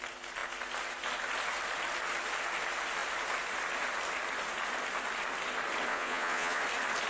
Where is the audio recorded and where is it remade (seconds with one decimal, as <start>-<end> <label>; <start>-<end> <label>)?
0.0-5.9 recorded; 5.9-6.6 remade; 6.6-7.1 recorded